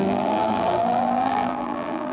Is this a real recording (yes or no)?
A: no